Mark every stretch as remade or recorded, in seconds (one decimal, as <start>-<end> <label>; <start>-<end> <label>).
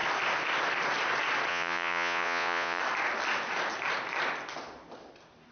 0.0-1.5 recorded; 1.5-2.8 remade; 2.8-5.5 recorded